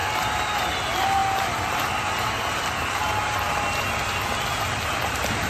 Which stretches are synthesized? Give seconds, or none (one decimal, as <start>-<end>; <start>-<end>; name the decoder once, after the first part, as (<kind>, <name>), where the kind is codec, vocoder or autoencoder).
none